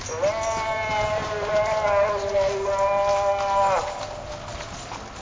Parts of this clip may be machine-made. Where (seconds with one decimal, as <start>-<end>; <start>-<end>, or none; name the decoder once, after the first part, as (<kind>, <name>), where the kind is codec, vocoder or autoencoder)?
none

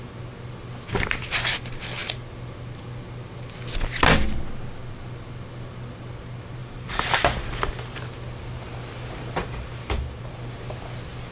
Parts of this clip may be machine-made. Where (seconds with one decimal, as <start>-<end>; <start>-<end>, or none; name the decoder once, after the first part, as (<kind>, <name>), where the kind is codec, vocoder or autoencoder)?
6.6-8.0 (vocoder, BigVGAN v2); 9.4-10.3

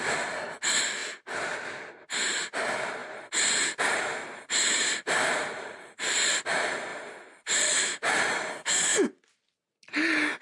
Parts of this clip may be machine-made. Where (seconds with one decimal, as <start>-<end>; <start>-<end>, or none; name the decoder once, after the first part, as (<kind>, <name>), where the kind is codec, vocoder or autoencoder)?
3.0-6.3 (vocoder, BigVGAN v2); 6.9-8.5

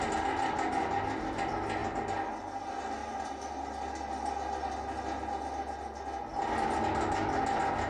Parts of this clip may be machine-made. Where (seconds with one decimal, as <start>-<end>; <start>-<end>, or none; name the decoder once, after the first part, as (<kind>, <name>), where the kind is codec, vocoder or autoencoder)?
3.0-3.5 (vocoder, BigVGAN v2)

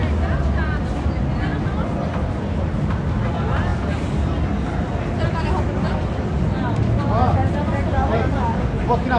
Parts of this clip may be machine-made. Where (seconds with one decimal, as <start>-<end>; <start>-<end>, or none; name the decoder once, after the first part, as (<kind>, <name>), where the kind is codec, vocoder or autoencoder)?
none

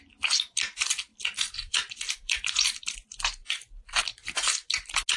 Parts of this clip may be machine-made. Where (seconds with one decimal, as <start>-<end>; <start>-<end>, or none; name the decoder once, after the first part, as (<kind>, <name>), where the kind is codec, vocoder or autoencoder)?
1.1-2.8 (vocoder, BigVGAN v2); 3.4-4.0

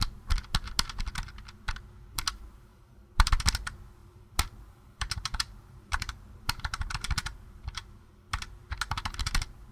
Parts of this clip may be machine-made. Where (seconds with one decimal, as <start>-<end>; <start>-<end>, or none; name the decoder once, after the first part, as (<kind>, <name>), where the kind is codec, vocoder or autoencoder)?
2.7-3.3 (vocoder, BigVGAN v2); 4.0-8.1